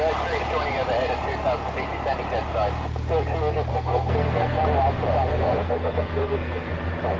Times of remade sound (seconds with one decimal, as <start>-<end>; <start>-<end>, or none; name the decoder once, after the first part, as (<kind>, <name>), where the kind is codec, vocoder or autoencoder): 3.7-4.6 (codec, SNAC); 5.3-6.7